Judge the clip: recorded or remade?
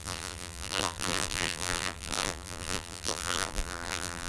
remade